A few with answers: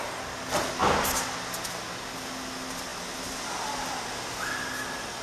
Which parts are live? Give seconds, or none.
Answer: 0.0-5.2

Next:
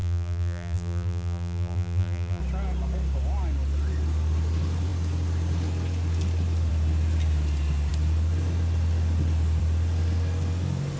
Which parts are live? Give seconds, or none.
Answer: 2.4-11.0

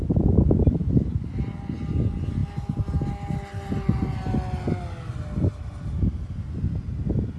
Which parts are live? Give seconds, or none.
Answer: 0.0-7.4

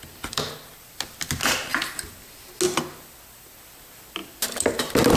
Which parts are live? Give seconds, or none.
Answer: 0.0-5.2

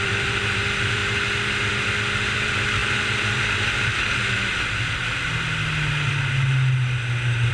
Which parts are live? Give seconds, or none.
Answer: 1.0-1.7; 2.8-7.5

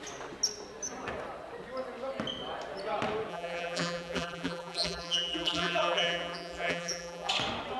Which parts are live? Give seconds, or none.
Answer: 0.0-3.3; 7.3-7.8